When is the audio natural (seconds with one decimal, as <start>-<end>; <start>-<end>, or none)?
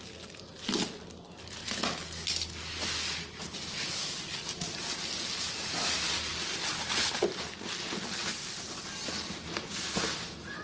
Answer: 0.0-10.6